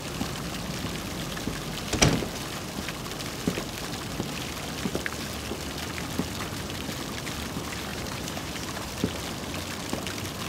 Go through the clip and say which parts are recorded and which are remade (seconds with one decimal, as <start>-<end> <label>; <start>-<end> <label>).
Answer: 0.0-7.9 recorded; 7.9-8.9 remade; 8.9-10.5 recorded